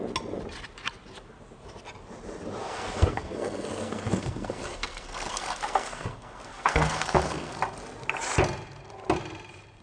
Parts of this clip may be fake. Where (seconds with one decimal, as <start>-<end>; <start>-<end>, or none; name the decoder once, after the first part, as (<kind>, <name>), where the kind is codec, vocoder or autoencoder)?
2.6-7.6 (codec, SNAC)